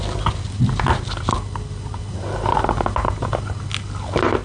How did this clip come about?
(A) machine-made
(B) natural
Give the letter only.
B